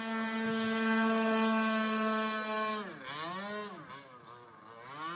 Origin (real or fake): real